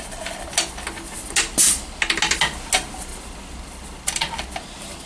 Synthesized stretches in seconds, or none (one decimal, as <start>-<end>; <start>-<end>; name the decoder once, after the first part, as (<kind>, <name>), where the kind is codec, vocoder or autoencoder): none